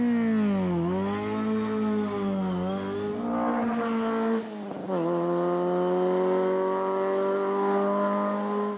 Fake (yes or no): no